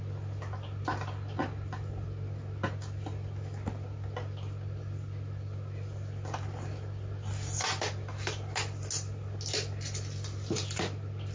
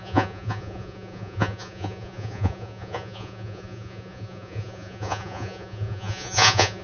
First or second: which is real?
first